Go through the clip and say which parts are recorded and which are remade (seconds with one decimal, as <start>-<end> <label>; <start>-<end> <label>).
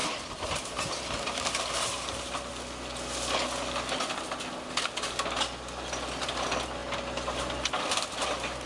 0.0-2.5 remade; 2.5-8.7 recorded